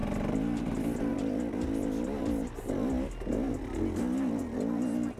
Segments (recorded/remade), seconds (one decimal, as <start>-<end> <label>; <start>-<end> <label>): 0.0-5.2 recorded

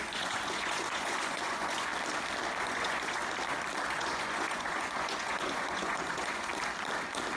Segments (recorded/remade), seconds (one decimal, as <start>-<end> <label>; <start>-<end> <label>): 0.0-1.9 remade; 1.9-2.6 recorded; 2.6-3.2 remade; 3.2-3.9 recorded; 3.9-6.5 remade; 6.5-7.4 recorded

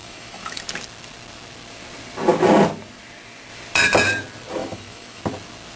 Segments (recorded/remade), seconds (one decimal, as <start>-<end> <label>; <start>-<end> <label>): 0.0-0.6 remade; 0.6-4.6 recorded; 4.6-5.2 remade; 5.2-5.8 recorded

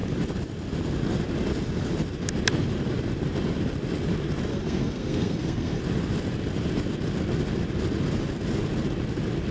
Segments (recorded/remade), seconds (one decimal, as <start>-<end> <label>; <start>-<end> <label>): 0.0-4.5 recorded; 4.5-5.8 remade; 5.8-9.5 recorded

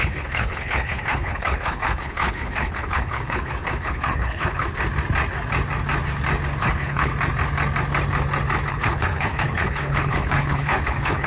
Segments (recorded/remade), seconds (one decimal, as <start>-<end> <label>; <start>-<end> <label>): 0.0-4.8 remade; 4.8-6.6 recorded; 6.6-7.1 remade; 7.1-8.7 recorded; 8.7-11.3 remade

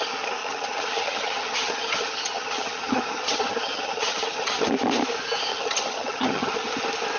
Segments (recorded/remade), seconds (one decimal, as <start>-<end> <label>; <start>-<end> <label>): 0.0-0.4 recorded; 0.4-4.7 remade; 4.7-5.5 recorded; 5.5-6.7 remade; 6.7-7.2 recorded

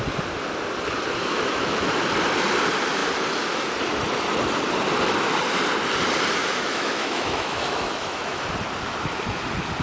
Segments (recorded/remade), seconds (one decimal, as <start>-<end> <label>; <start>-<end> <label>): 0.0-1.2 recorded; 1.2-1.9 remade; 1.9-6.4 recorded; 6.4-8.4 remade; 8.4-9.8 recorded

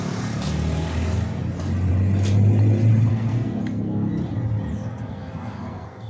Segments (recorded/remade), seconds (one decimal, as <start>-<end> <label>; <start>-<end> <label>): 0.0-3.1 recorded; 3.1-4.1 remade; 4.1-4.7 recorded; 4.7-6.1 remade